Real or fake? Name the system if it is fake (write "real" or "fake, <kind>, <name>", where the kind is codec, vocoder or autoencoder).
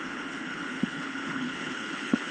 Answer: fake, codec, HILCodec